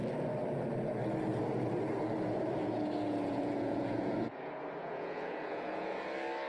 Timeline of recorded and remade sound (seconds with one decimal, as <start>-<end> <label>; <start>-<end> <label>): 0.0-2.6 recorded; 2.6-6.0 remade; 6.0-6.5 recorded